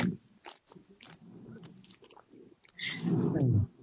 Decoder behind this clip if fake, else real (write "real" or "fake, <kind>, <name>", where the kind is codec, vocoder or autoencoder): real